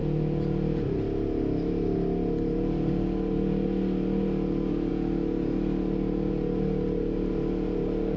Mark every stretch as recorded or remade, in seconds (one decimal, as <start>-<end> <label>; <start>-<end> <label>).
0.0-8.2 recorded